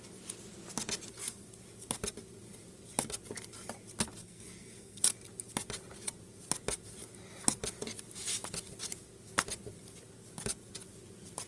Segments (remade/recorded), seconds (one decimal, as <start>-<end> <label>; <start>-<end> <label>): 0.0-4.2 recorded; 4.2-5.0 remade; 5.0-11.5 recorded